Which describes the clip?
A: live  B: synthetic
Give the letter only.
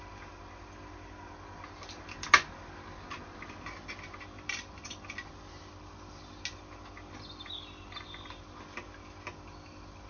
A